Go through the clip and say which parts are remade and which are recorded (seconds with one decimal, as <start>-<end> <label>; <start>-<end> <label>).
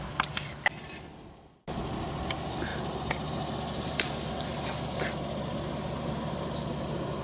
0.0-7.2 recorded